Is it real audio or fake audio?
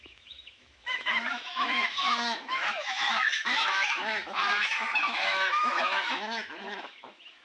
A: fake